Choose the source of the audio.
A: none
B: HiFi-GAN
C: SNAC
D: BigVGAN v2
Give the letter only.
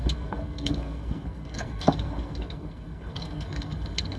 C